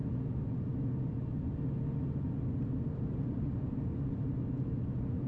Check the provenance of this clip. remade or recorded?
remade